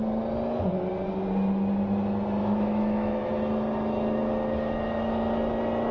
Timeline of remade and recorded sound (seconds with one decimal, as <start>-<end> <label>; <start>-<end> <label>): 0.0-2.4 recorded; 2.4-3.3 remade; 3.3-5.9 recorded